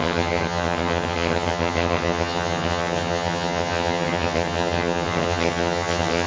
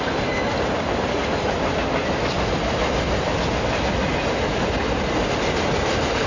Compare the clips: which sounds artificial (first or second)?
first